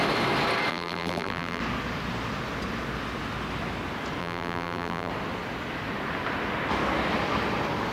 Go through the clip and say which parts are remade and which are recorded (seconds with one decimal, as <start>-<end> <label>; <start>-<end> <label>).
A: 0.0-0.7 recorded; 0.7-1.6 remade; 1.6-4.2 recorded; 4.2-5.1 remade; 5.1-7.9 recorded